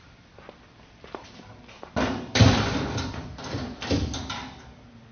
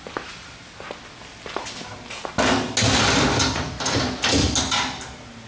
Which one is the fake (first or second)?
first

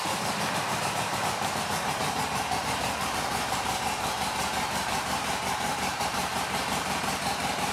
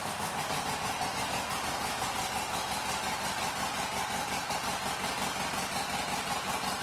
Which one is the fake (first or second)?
first